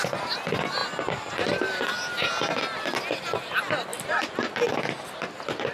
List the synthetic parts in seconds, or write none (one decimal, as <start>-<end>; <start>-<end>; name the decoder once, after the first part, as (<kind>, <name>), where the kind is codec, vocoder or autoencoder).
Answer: none